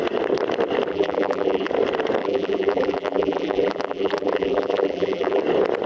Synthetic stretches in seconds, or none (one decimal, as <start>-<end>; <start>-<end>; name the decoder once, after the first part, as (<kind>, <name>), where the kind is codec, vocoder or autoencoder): 0.9-1.7 (vocoder, BigVGAN v2); 2.2-5.4